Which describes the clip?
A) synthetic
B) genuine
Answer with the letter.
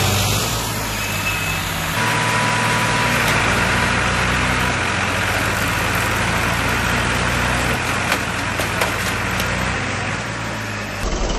B